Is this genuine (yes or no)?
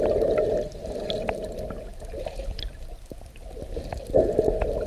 yes